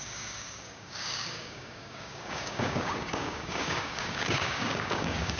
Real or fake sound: fake